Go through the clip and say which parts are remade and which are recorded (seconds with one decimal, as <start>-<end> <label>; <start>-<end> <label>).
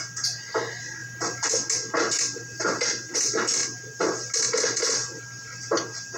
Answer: 0.0-6.2 recorded